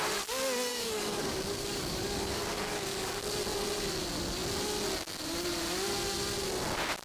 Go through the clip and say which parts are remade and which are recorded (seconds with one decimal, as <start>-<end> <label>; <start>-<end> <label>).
0.0-0.7 recorded; 0.7-3.2 remade; 3.2-7.0 recorded